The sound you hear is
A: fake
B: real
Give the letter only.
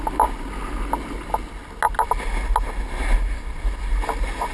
B